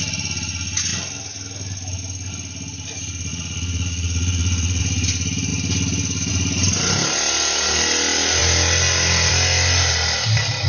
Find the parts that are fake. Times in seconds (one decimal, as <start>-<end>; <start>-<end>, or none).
3.3-4.8